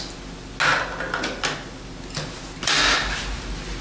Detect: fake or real real